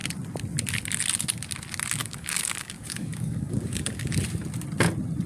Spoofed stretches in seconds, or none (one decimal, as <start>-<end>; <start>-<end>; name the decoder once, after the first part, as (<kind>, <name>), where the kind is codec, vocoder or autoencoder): 2.0-4.1 (codec, DAC)